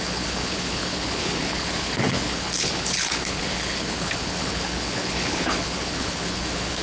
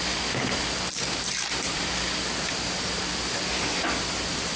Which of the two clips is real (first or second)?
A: second